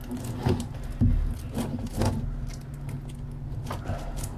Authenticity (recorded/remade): recorded